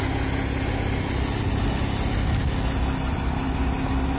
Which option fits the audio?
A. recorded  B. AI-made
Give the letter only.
A